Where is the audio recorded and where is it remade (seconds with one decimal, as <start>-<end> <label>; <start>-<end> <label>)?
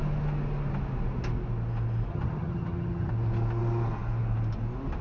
0.0-2.1 recorded; 2.1-3.1 remade; 3.1-5.0 recorded